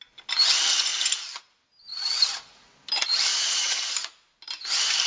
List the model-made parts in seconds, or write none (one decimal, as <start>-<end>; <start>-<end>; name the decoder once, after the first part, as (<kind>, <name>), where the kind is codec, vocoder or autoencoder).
1.9-2.7 (vocoder, Vocos); 3.3-4.4